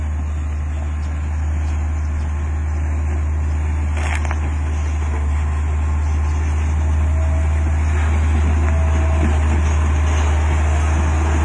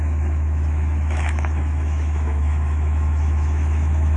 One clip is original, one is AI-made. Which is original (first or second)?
first